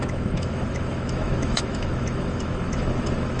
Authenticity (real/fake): fake